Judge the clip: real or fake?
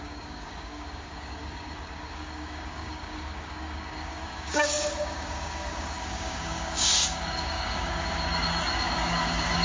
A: fake